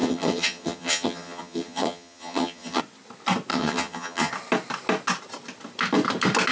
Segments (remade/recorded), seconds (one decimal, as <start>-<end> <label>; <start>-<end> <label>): 0.0-2.8 remade; 2.8-3.5 recorded; 3.5-4.3 remade; 4.3-6.5 recorded

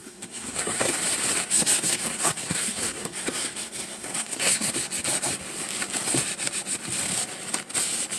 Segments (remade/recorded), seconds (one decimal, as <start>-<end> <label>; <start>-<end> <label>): 0.0-0.9 remade; 0.9-1.4 recorded; 1.4-4.7 remade; 4.7-8.2 recorded

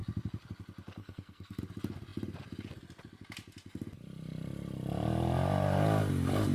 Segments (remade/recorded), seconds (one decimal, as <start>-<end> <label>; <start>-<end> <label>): 0.0-1.0 recorded; 1.0-1.6 remade; 1.6-6.5 recorded

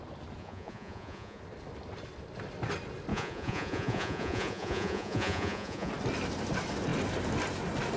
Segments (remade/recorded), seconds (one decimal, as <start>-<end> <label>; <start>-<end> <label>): 0.0-0.4 recorded; 0.4-1.4 remade; 1.4-3.1 recorded; 3.1-5.9 remade; 5.9-8.0 recorded

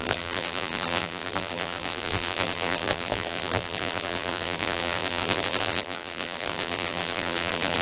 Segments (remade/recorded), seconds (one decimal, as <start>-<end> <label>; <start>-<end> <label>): 0.0-7.8 remade

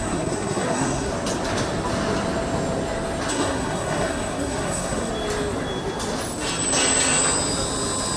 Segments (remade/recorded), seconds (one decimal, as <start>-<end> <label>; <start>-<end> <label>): 0.0-1.1 remade; 1.1-3.3 recorded; 3.3-5.1 remade; 5.1-8.2 recorded

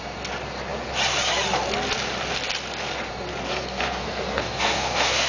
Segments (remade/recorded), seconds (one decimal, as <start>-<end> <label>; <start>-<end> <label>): 0.0-3.5 recorded; 3.5-5.3 remade

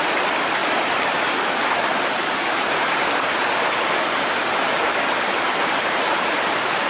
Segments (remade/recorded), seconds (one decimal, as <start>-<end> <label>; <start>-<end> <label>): 0.0-0.6 recorded; 0.6-1.2 remade; 1.2-1.9 recorded; 1.9-6.0 remade; 6.0-6.9 recorded